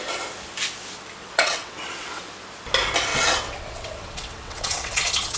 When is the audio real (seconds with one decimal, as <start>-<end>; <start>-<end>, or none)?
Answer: 0.0-1.2; 2.3-3.1